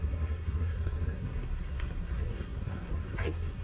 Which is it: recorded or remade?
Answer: remade